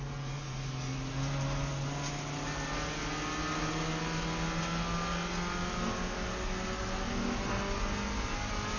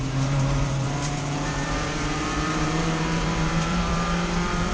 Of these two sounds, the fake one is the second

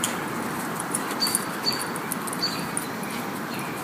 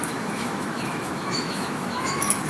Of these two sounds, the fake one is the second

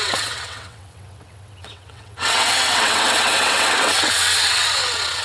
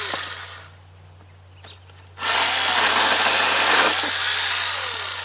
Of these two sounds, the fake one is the first